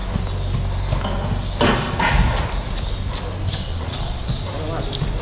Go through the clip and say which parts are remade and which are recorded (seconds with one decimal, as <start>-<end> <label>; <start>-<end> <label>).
0.0-3.6 recorded; 3.6-4.3 remade; 4.3-5.2 recorded